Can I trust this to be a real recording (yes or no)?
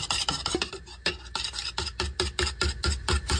yes